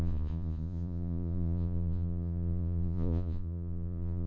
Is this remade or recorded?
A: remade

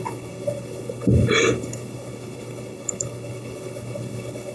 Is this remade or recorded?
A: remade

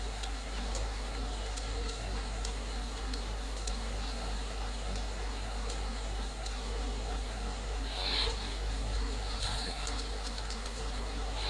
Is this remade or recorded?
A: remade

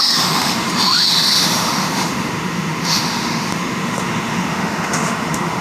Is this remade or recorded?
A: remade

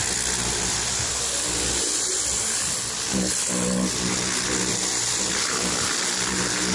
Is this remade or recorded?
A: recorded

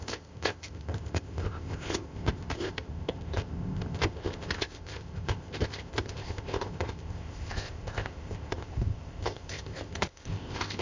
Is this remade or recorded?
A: remade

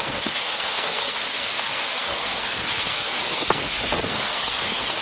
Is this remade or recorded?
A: remade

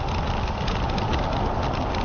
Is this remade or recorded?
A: recorded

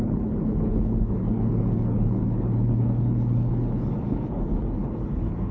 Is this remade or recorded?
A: remade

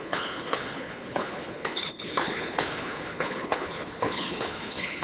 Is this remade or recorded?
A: remade